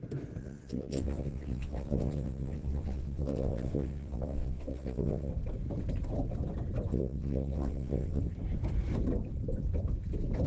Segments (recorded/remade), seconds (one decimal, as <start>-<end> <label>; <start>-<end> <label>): 0.0-0.4 recorded; 0.4-5.3 remade; 5.3-6.9 recorded; 6.9-8.2 remade; 8.2-10.5 recorded